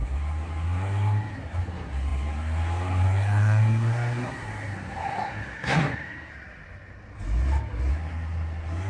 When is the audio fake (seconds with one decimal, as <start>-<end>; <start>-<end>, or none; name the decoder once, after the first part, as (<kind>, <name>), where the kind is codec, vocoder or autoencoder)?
0.0-6.3 (codec, SNAC); 7.9-8.9